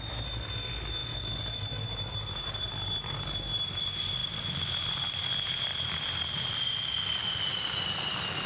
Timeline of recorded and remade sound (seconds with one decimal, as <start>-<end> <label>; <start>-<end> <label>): 0.0-8.5 recorded